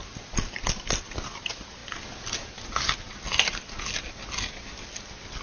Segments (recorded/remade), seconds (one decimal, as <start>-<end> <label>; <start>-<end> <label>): 0.0-5.4 recorded